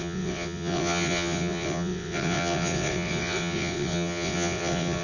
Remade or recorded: remade